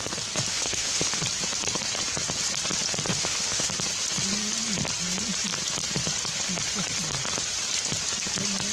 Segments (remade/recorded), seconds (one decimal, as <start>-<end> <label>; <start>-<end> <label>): 0.0-0.5 recorded; 0.5-1.2 remade; 1.2-3.1 recorded; 3.1-3.7 remade; 3.7-8.7 recorded